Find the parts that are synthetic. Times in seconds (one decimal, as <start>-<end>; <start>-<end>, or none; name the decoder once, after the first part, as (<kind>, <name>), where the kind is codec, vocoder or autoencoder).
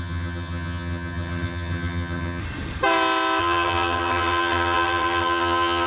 0.0-2.4 (vocoder, HiFi-GAN); 3.4-5.9